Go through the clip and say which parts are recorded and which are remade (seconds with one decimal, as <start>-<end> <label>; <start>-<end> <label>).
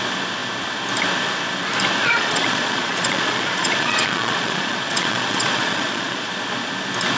0.0-2.0 recorded; 2.0-6.3 remade; 6.3-7.2 recorded